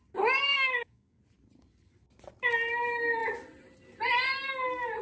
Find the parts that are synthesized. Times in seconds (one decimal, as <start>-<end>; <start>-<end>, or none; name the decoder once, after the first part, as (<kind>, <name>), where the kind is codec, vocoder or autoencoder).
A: 0.5-1.2 (codec, DAC)